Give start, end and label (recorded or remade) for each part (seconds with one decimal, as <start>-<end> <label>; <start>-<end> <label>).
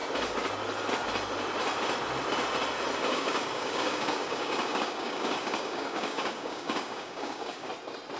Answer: 0.0-3.1 recorded; 3.1-7.7 remade; 7.7-8.2 recorded